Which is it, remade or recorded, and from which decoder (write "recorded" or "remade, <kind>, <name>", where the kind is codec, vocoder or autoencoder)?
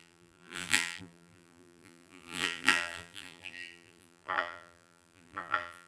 remade, vocoder, BigVGAN v2